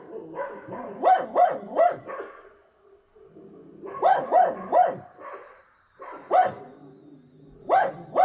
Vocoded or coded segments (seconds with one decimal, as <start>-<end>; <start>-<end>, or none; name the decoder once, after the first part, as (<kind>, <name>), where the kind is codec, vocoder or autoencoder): none